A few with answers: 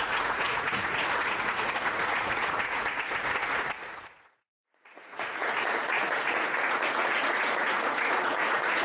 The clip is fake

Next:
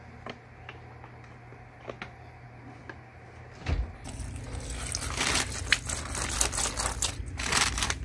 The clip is real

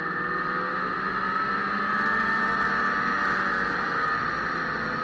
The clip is real